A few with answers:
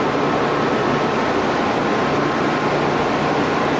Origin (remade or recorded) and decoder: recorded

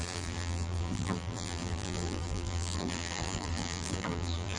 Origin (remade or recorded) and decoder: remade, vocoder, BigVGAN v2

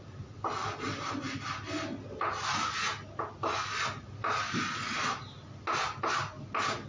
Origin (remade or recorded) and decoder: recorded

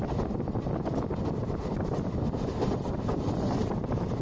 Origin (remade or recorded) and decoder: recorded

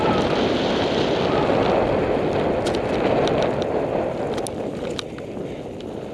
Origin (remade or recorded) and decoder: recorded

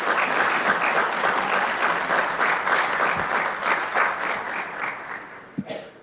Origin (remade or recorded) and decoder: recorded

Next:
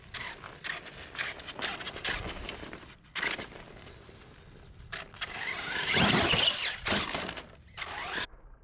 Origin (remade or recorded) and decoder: recorded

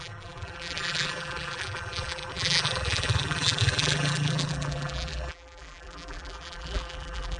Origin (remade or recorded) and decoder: remade, vocoder, BigVGAN v2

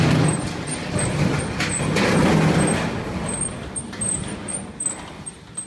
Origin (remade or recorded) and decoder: recorded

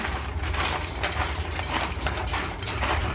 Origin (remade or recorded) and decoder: remade, vocoder, BigVGAN v2